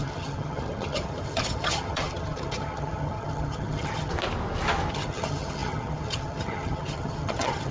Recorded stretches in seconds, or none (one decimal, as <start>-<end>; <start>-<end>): 4.1-4.9